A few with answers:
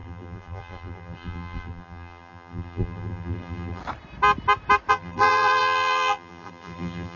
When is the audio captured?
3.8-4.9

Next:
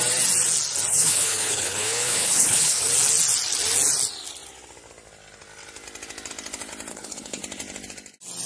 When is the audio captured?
0.0-0.9; 2.8-6.9; 7.4-8.5

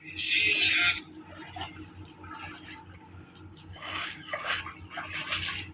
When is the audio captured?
0.0-3.5; 4.6-5.7

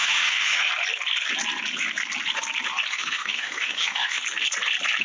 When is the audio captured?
0.7-2.9; 4.2-5.0

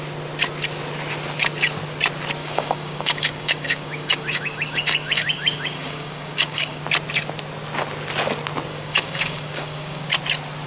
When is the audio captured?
0.0-2.4; 6.8-8.7; 10.1-10.7

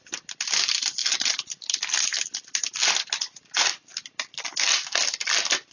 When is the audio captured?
0.0-5.7

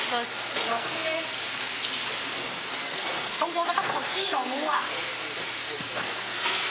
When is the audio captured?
0.0-0.7; 1.2-2.8; 5.1-5.6

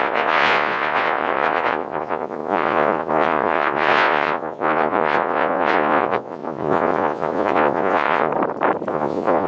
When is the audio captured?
8.3-8.9